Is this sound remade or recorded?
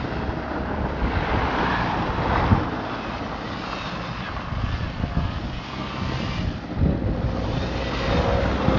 remade